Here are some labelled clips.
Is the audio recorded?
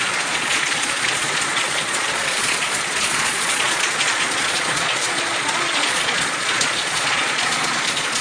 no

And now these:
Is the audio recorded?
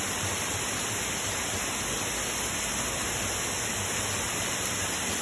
yes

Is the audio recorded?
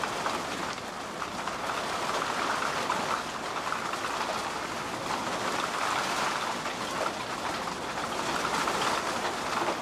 yes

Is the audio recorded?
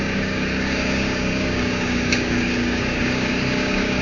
no